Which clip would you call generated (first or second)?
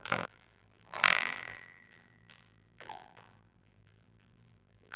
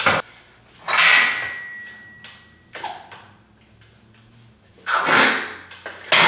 first